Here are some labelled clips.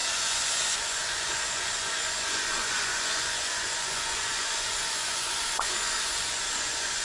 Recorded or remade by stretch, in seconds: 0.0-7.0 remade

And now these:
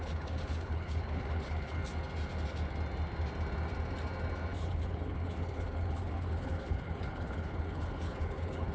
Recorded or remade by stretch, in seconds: 0.0-1.8 remade; 1.8-4.6 recorded; 4.6-8.7 remade

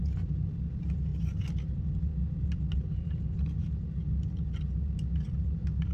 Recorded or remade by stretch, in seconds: 0.0-5.9 recorded

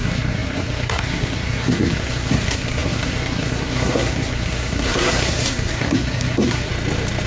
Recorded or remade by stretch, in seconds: 0.0-6.7 remade; 6.7-7.3 recorded

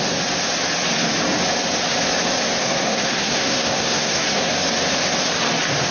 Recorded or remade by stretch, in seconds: 0.0-2.6 recorded; 2.6-4.5 remade; 4.5-5.9 recorded

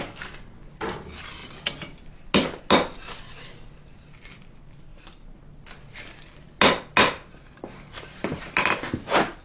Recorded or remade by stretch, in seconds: 0.0-9.4 recorded

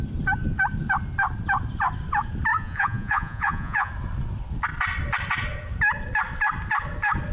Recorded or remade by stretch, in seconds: 0.0-2.5 recorded; 2.5-3.9 remade; 3.9-7.3 recorded